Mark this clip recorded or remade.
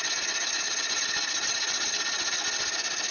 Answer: recorded